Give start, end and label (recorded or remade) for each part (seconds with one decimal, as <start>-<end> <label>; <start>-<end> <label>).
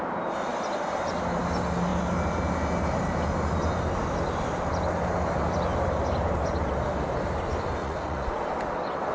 0.0-7.8 recorded; 7.8-8.4 remade; 8.4-9.1 recorded